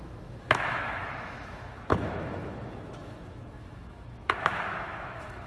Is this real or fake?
fake